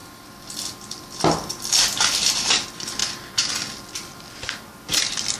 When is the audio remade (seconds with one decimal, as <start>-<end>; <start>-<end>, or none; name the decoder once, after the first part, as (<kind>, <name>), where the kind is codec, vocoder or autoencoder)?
none